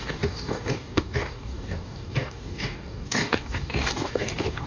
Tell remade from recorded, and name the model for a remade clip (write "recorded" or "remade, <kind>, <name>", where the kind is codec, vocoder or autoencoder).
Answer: remade, codec, DAC